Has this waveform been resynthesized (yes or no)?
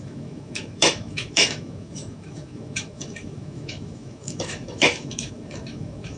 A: yes